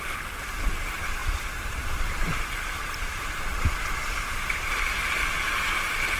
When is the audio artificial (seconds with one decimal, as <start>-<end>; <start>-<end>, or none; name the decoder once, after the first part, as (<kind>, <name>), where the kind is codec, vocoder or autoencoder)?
1.2-3.6 (vocoder, BigVGAN v2); 5.2-5.8